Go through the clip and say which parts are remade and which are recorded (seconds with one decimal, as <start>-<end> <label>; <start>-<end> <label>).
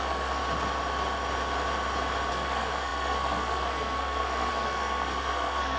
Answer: 0.0-0.4 remade; 0.4-2.3 recorded; 2.3-5.8 remade